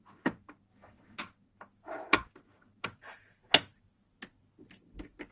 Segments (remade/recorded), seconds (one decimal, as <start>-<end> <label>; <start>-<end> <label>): 0.0-5.3 recorded